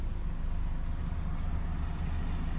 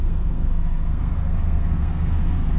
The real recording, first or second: first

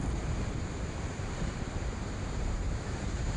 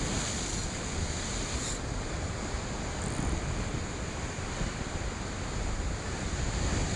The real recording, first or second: second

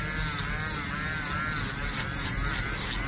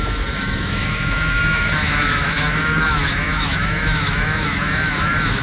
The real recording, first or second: first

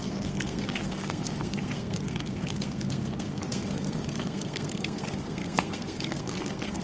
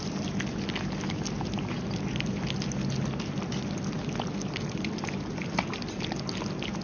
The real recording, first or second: second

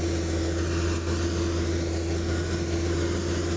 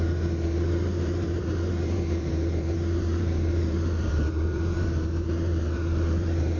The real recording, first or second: first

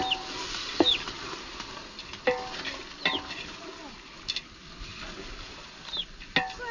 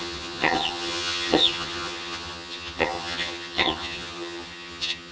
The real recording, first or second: first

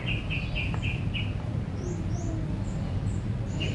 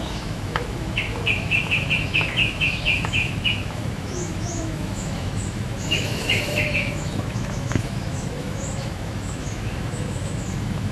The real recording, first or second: first